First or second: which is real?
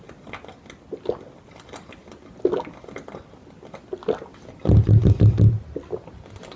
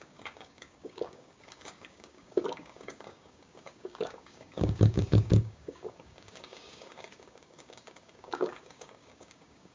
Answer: first